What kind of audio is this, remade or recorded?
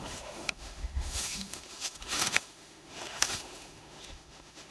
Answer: remade